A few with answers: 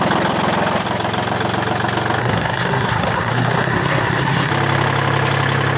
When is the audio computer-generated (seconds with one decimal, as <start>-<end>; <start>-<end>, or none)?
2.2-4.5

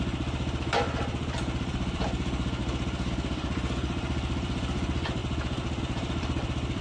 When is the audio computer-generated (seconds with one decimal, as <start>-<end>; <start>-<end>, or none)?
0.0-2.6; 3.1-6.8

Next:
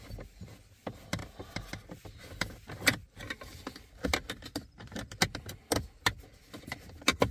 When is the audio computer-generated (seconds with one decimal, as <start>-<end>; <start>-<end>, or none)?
none

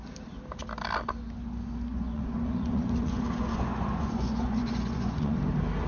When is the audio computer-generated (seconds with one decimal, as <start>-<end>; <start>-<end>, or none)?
1.9-5.4

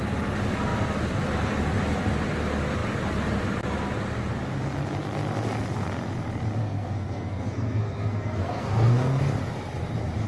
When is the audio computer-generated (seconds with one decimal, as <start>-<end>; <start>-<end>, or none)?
6.6-9.2

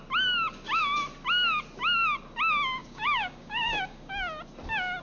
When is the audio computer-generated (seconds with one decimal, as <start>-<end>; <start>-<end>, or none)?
2.8-4.1

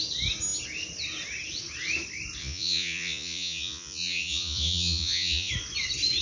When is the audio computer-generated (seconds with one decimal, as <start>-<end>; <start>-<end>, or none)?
2.4-5.5

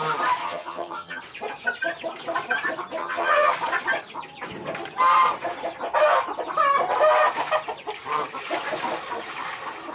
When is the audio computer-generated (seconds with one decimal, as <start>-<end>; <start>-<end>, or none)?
0.4-1.2; 3.0-3.5